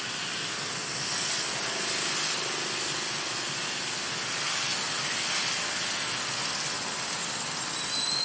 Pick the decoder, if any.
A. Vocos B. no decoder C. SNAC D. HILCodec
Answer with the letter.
B